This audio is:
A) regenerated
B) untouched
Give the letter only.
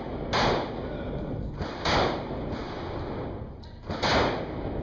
B